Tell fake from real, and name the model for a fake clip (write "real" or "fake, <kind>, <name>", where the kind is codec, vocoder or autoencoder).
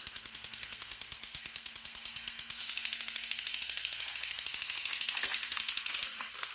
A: fake, codec, SNAC